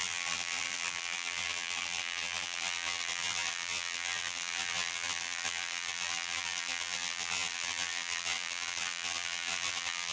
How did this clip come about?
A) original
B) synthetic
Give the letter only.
B